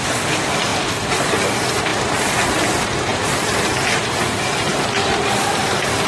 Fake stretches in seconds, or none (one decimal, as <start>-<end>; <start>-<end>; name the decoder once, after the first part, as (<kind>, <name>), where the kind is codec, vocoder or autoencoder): 1.9-2.7 (vocoder, BigVGAN v2); 3.1-3.7; 4.7-5.5